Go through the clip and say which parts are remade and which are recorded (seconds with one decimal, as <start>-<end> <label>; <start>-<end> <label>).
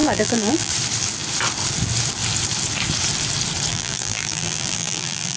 0.0-0.7 remade; 0.7-3.7 recorded; 3.7-5.4 remade